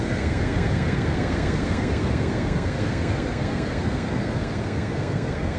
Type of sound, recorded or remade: remade